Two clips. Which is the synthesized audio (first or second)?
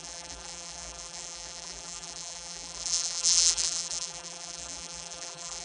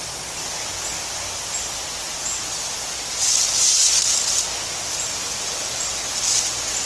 first